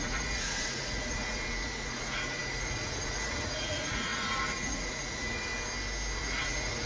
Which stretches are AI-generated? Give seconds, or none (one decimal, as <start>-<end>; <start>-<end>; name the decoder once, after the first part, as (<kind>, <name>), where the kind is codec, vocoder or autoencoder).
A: 0.0-5.5 (vocoder, Vocos); 6.2-6.9